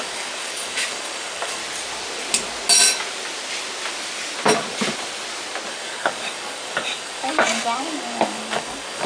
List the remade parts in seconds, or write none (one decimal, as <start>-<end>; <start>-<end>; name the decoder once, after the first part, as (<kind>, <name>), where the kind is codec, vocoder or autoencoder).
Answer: 0.0-1.6 (codec, DAC); 5.7-9.1